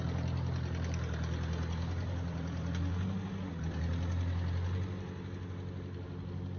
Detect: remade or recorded recorded